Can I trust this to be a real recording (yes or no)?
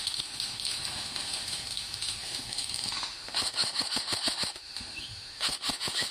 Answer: no